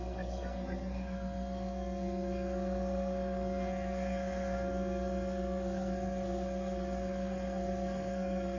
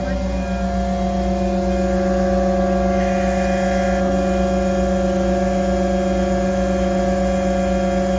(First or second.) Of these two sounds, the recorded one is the second